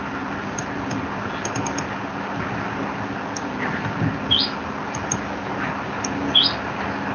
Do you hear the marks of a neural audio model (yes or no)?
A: no